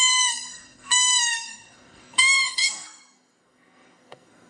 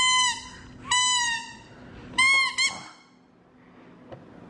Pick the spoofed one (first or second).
first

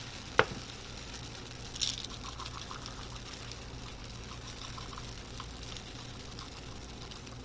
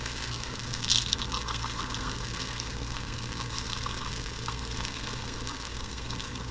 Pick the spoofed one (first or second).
second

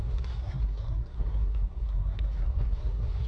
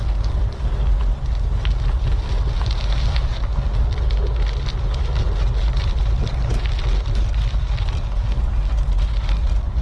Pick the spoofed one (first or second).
first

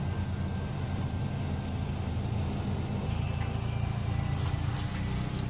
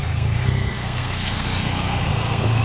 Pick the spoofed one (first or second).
second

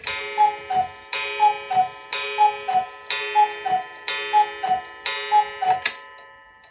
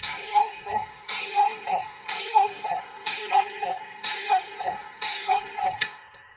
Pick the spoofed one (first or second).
second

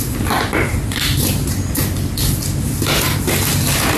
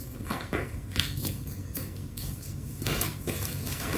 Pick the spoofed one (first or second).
second